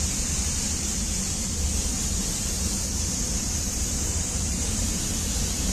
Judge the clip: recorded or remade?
remade